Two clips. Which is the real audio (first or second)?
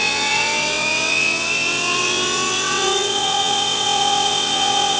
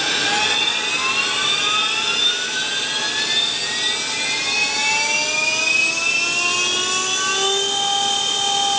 second